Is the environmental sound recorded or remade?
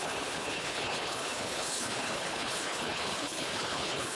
remade